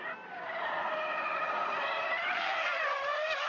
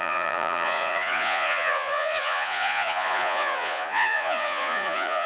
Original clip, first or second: first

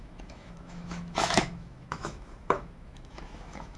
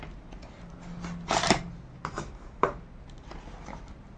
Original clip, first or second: second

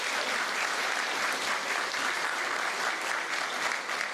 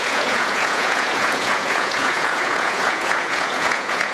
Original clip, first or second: first